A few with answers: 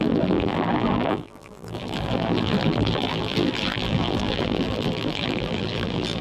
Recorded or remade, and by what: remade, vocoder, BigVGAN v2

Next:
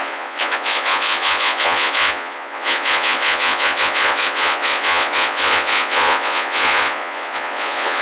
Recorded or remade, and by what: remade, vocoder, Vocos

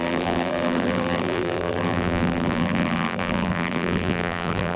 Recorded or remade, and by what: remade, vocoder, BigVGAN v2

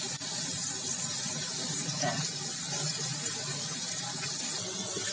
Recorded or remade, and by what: recorded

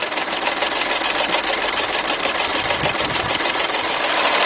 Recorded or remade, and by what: remade, vocoder, BigVGAN v2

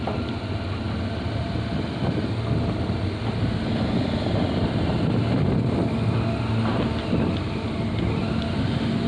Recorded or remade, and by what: recorded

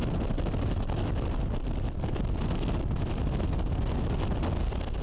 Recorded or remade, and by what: recorded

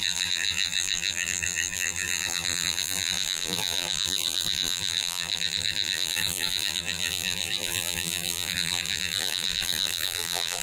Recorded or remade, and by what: remade, vocoder, BigVGAN v2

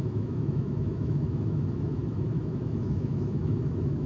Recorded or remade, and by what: remade, autoencoder, DAC-VAE